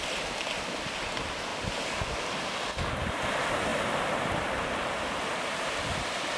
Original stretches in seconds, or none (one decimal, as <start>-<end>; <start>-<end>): 0.0-6.4

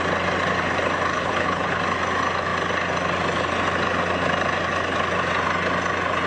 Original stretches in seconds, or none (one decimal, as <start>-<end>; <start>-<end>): 0.0-1.1; 1.8-6.3